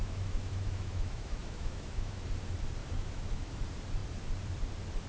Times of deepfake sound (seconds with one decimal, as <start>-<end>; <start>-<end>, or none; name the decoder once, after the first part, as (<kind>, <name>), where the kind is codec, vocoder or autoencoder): 0.0-2.3 (autoencoder, DAC-VAE); 2.8-3.6